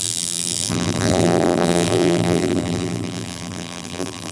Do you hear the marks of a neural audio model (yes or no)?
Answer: yes